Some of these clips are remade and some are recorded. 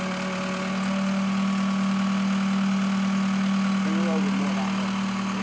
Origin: recorded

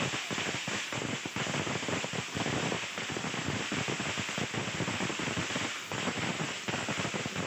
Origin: recorded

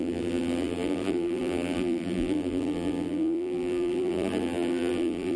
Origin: remade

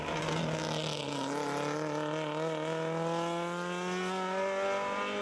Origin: recorded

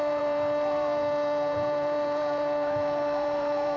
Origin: remade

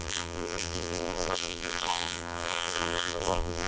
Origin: remade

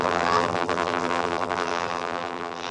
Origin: remade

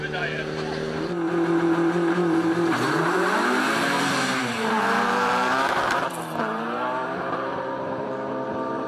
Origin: remade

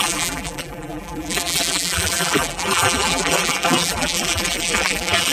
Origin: remade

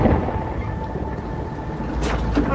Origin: recorded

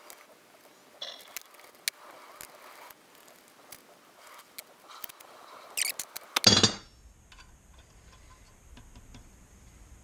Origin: recorded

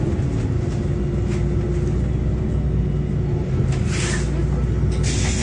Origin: recorded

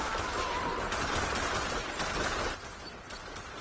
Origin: remade